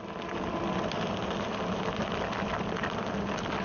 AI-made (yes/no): no